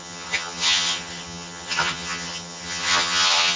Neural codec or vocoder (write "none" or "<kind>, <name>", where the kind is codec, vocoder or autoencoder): vocoder, HiFi-GAN